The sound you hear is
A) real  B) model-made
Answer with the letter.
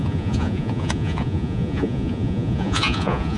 B